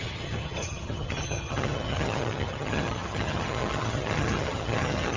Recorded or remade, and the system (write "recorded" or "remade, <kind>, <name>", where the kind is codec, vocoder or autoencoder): remade, vocoder, HiFi-GAN